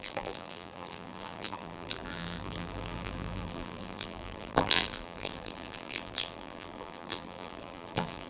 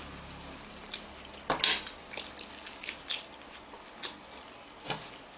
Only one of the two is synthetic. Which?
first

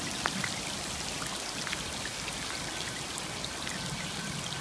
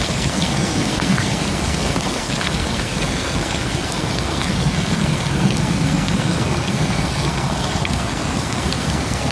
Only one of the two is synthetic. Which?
second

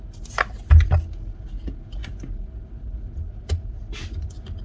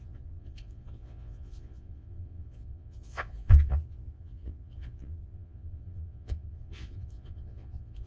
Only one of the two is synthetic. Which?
second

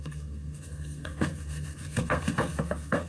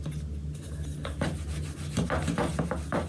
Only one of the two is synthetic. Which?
first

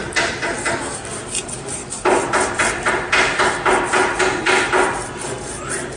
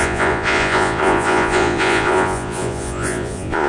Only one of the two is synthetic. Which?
second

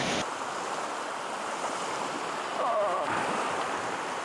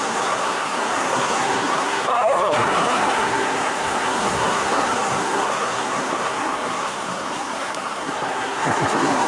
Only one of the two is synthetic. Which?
second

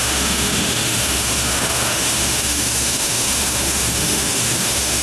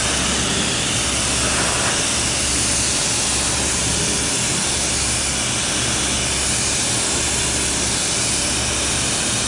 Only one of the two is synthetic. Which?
first